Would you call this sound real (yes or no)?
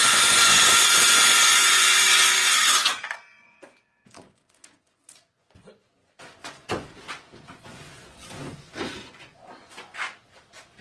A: no